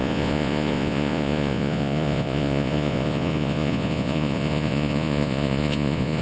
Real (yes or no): no